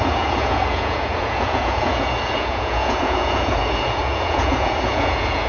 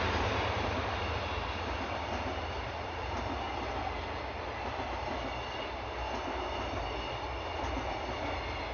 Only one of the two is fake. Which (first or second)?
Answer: first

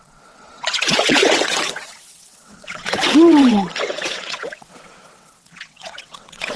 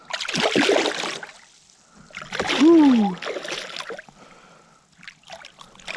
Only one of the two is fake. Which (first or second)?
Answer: first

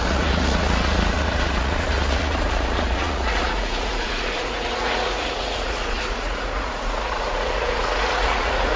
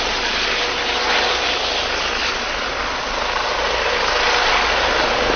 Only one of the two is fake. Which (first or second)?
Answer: first